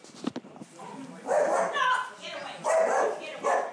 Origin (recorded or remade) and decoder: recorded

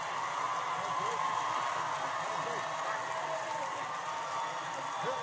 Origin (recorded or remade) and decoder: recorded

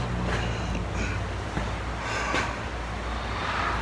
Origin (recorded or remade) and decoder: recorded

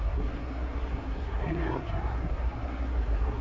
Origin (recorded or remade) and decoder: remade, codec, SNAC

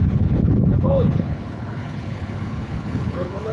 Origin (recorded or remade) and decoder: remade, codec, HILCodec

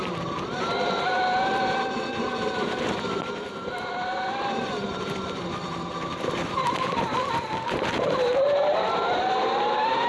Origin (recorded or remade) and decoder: remade, vocoder, BigVGAN v2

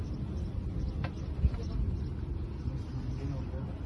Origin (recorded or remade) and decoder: recorded